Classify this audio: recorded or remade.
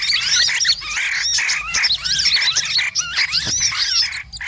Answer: recorded